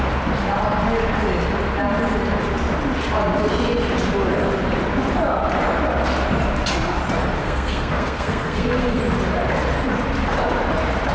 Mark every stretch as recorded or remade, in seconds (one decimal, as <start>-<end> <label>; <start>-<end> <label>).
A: 0.0-7.4 recorded; 7.4-9.0 remade; 9.0-11.1 recorded